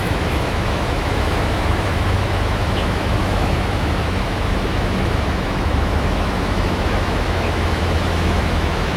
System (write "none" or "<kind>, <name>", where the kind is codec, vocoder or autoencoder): autoencoder, DAC-VAE